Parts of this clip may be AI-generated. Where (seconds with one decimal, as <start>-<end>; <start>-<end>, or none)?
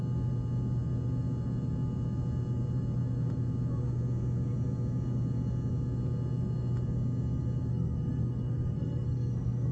7.7-9.7